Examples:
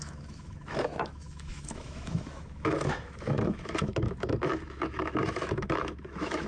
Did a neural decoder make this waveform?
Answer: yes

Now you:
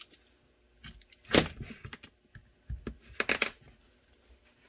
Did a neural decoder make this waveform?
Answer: no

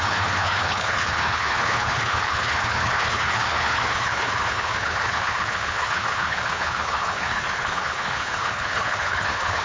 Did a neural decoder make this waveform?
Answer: yes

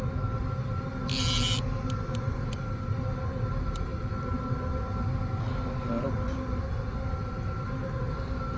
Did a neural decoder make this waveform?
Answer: no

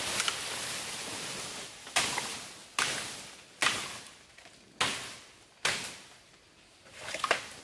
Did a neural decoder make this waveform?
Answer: no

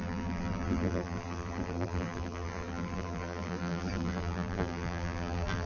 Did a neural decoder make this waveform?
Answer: yes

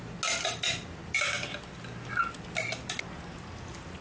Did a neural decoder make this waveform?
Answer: no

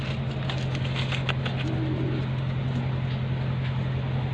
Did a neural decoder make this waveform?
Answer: no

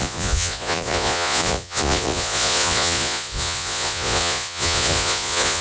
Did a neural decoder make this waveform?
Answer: yes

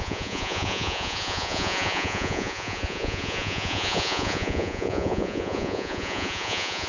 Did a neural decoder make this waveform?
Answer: yes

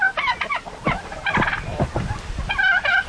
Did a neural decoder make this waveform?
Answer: no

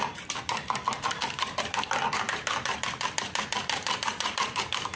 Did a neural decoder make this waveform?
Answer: yes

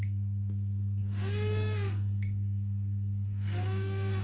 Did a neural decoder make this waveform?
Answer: yes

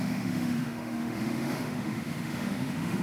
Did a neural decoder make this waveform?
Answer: yes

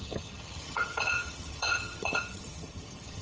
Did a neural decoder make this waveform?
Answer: yes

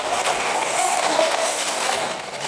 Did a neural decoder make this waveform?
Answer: yes